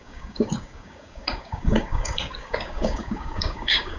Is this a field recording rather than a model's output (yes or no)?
no